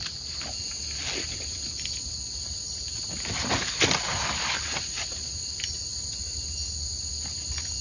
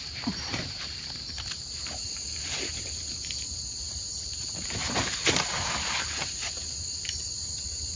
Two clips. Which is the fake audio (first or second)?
second